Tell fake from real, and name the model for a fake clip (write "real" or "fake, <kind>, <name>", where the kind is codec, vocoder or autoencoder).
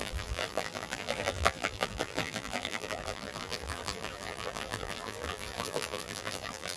fake, vocoder, BigVGAN v2